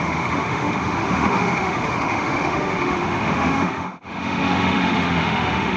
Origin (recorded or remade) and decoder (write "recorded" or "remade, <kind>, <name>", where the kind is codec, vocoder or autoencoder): remade, autoencoder, DAC-VAE